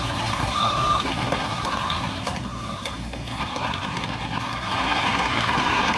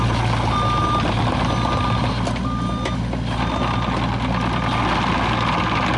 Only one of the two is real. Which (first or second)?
second